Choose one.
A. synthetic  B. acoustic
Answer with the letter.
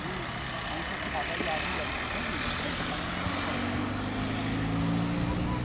B